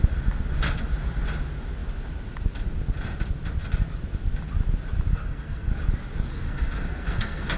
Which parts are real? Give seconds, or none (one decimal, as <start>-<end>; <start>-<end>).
0.0-5.1; 5.7-6.3